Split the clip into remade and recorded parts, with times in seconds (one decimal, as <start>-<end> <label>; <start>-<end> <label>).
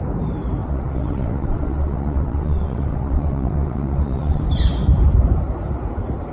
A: 0.0-0.6 recorded; 0.6-4.4 remade; 4.4-6.3 recorded